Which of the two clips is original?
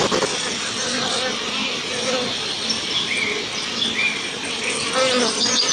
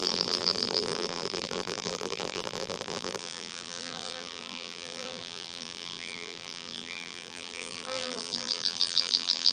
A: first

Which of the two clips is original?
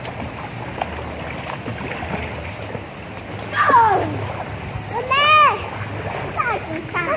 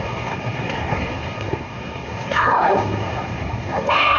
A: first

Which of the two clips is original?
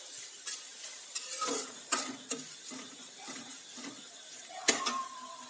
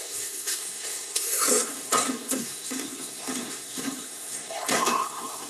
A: first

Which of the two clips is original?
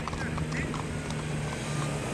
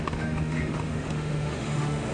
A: first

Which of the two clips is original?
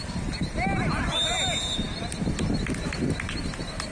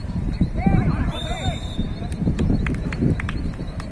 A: first